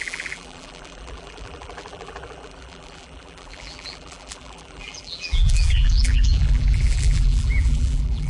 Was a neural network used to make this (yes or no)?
yes